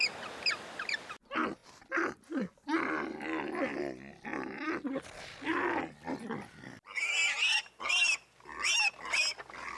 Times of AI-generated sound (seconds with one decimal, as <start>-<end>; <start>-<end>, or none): none